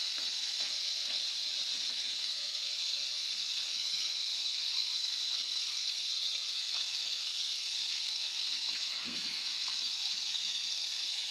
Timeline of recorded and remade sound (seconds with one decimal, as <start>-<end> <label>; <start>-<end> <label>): 0.0-1.2 remade; 1.2-1.9 recorded; 1.9-11.3 remade

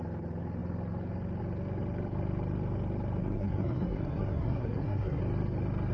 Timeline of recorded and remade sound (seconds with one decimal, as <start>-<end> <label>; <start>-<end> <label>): 0.0-3.2 recorded; 3.2-5.2 remade; 5.2-5.9 recorded

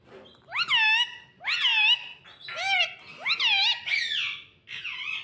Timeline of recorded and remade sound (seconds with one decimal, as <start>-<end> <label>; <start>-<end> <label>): 0.0-5.2 recorded

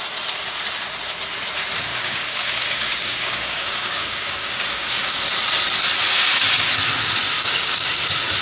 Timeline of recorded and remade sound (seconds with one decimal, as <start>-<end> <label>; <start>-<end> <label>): 0.0-1.9 recorded; 1.9-5.3 remade; 5.3-7.3 recorded; 7.3-8.0 remade; 8.0-8.4 recorded